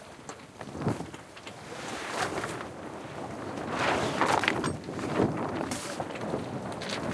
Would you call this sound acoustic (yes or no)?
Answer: yes